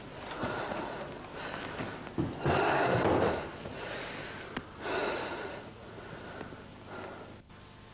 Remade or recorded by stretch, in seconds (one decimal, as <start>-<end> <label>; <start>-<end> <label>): 0.0-0.4 recorded; 0.4-1.1 remade; 1.1-3.6 recorded; 3.6-4.1 remade; 4.1-5.0 recorded; 5.0-6.2 remade; 6.2-7.9 recorded